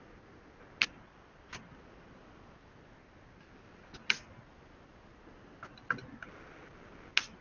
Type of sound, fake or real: real